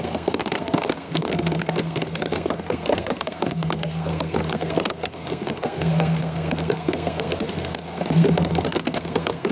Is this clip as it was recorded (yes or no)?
no